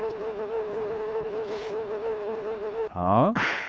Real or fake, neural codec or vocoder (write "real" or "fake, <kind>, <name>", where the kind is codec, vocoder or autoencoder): fake, codec, HILCodec